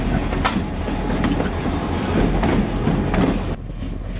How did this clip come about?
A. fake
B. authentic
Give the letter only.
B